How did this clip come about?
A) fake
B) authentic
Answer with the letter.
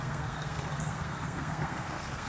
A